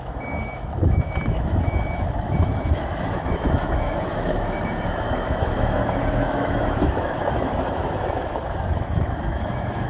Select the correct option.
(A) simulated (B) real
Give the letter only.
A